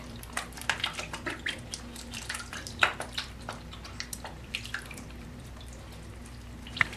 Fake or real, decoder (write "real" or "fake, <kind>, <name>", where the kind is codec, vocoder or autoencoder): fake, vocoder, BigVGAN v2